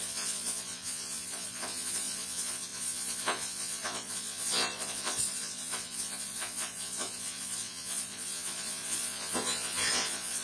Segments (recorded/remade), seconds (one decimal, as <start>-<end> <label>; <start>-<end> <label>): 0.0-10.4 remade